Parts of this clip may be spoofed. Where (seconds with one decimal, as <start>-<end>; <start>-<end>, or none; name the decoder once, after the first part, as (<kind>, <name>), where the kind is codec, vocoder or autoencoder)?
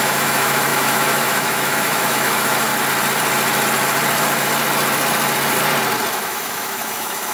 0.0-2.7 (autoencoder, DAC-VAE); 6.1-7.3